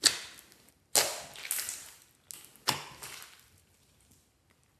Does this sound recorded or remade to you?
recorded